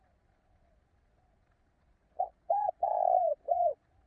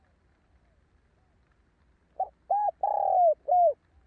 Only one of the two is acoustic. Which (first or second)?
second